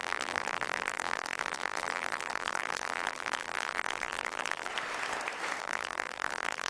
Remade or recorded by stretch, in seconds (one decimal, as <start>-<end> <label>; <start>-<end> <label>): 0.0-4.7 remade; 4.7-5.6 recorded; 5.6-6.7 remade